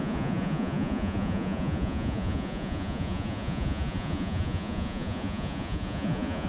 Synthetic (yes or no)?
yes